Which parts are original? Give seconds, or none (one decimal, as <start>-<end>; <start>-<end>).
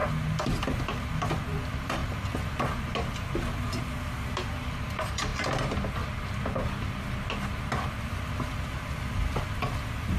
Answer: 0.0-1.6; 2.0-4.5; 5.3-8.0